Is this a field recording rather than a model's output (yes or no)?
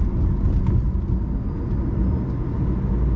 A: yes